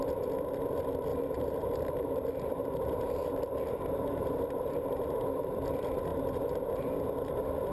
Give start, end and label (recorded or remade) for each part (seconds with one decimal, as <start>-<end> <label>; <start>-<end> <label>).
0.0-1.1 recorded; 1.1-5.0 remade; 5.0-6.1 recorded; 6.1-6.7 remade; 6.7-7.7 recorded